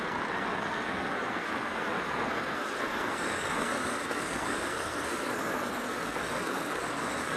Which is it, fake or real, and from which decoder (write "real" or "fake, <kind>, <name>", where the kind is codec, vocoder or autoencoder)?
fake, codec, SNAC